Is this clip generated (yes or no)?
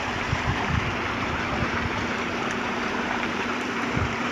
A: yes